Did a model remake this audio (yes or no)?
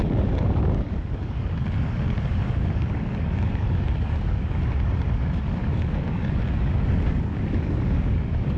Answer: yes